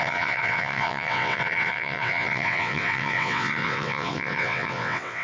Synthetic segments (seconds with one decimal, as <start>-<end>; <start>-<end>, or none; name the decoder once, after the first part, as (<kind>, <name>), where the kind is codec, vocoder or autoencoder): 0.0-5.2 (vocoder, WaveNeXt)